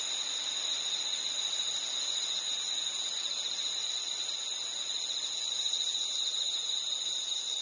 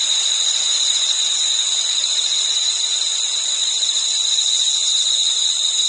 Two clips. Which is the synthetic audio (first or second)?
second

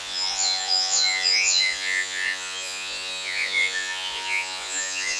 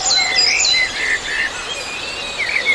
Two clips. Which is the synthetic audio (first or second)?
first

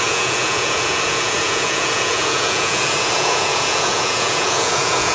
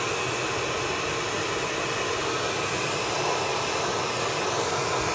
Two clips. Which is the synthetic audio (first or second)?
first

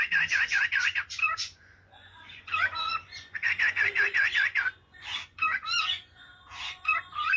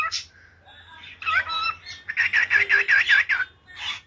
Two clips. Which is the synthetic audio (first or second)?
first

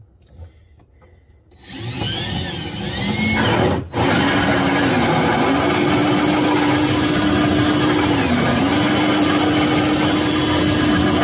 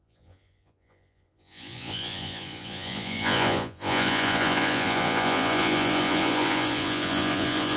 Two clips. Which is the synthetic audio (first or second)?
second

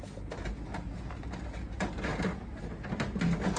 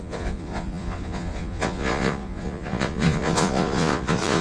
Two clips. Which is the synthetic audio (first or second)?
second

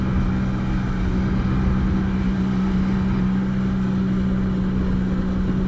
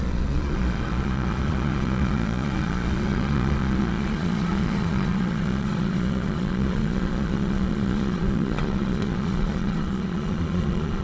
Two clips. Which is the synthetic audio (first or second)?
second